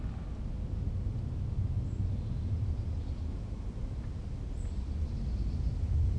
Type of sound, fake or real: real